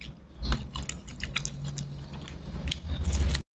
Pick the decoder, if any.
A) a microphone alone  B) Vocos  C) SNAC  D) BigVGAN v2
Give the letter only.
A